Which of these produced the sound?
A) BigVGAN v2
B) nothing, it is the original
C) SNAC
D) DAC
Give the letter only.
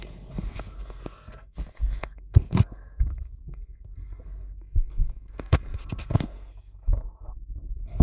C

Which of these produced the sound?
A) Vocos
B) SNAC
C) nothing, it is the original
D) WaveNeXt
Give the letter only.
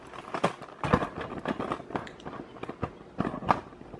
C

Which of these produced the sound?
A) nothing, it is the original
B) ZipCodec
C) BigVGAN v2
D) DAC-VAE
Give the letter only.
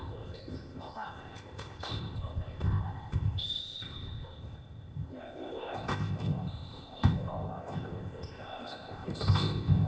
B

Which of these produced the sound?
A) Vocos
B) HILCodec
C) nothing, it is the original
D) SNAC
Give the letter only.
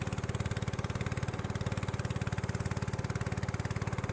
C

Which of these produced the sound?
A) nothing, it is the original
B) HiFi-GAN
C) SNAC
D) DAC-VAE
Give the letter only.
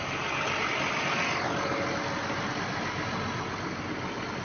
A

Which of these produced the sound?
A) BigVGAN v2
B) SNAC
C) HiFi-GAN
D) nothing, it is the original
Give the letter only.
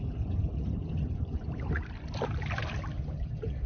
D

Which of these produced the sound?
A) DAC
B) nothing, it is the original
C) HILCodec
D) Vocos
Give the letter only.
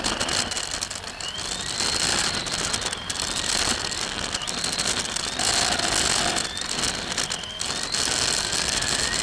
B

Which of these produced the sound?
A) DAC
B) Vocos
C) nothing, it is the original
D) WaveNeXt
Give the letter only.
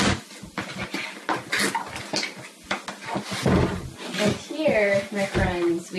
C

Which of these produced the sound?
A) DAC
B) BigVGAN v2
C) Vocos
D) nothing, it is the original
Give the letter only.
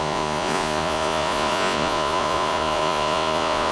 C